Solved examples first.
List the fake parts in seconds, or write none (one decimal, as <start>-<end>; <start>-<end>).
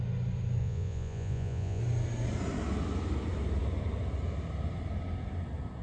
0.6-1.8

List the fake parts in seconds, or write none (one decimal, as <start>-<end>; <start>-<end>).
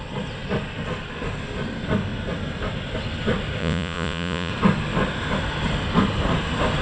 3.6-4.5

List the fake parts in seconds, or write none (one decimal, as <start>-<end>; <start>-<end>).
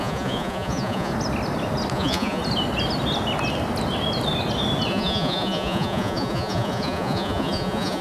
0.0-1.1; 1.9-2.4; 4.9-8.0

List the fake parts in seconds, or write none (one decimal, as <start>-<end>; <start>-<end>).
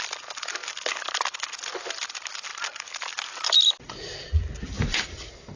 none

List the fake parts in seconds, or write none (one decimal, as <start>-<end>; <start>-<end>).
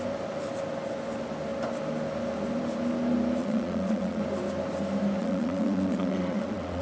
3.4-4.2; 5.2-6.8